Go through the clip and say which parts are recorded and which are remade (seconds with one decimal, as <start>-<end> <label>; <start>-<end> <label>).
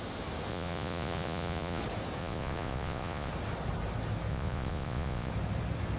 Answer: 0.0-0.5 recorded; 0.5-1.8 remade; 1.8-2.2 recorded; 2.2-3.3 remade; 3.3-4.3 recorded; 4.3-5.3 remade; 5.3-6.0 recorded